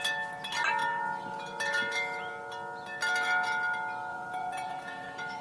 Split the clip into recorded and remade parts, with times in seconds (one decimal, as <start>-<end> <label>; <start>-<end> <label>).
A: 0.0-0.8 recorded; 0.8-1.7 remade; 1.7-4.1 recorded; 4.1-5.4 remade